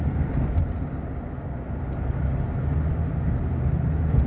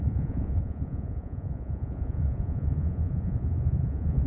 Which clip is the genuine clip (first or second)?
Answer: first